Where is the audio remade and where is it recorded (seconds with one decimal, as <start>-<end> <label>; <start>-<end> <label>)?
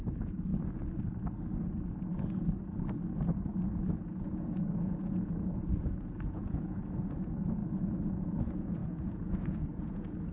0.0-0.5 remade; 0.5-4.2 recorded; 4.2-7.6 remade; 7.6-8.1 recorded; 8.1-10.3 remade